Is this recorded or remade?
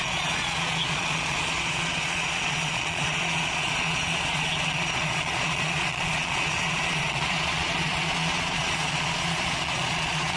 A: remade